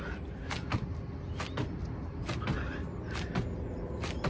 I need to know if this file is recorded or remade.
recorded